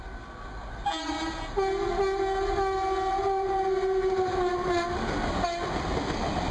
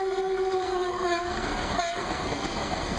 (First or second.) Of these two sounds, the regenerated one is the second